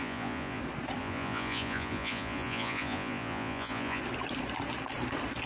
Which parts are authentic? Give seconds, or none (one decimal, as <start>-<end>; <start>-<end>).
0.6-1.0; 4.0-5.5